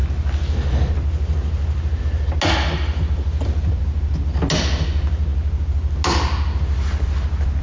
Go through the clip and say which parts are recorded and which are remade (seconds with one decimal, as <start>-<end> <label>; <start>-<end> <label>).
0.0-7.6 recorded